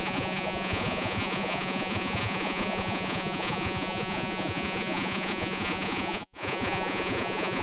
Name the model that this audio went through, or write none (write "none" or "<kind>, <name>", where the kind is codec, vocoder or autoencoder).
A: vocoder, Vocos